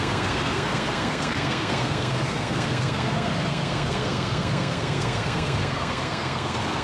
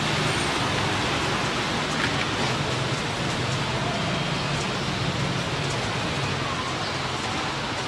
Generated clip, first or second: first